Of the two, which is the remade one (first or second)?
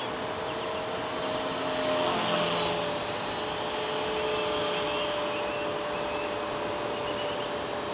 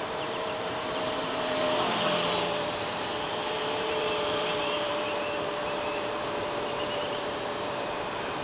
second